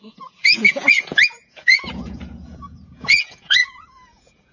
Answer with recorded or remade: remade